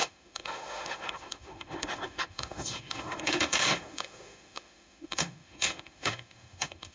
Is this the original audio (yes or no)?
no